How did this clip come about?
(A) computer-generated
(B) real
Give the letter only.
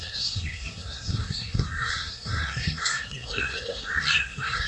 A